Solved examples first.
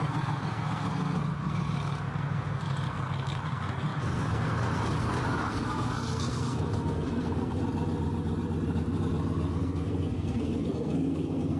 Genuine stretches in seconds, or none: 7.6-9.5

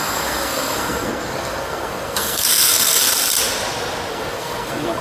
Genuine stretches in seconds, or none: 3.1-4.1

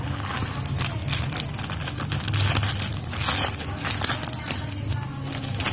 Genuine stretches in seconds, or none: 0.0-5.7

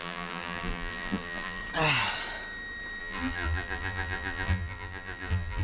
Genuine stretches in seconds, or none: 1.6-3.0